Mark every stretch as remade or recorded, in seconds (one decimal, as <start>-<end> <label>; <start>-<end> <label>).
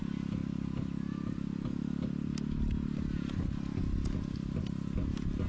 0.0-5.5 recorded